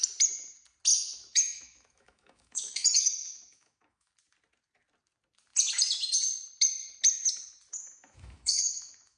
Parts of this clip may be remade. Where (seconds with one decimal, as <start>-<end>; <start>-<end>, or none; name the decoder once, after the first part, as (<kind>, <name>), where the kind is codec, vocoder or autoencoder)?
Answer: 0.9-4.1 (autoencoder, DAC-VAE); 7.8-9.2